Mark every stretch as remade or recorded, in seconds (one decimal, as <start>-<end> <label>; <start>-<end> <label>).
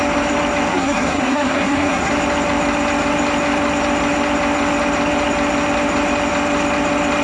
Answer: 0.0-0.7 recorded; 0.7-2.1 remade; 2.1-7.2 recorded